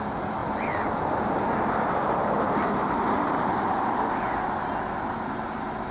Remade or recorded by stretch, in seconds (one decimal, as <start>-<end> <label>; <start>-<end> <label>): 0.0-5.9 recorded